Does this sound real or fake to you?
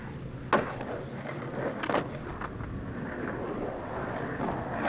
real